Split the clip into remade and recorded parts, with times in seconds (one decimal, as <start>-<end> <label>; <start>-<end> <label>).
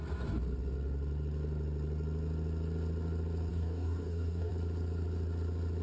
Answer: 0.0-3.5 recorded; 3.5-4.5 remade; 4.5-5.8 recorded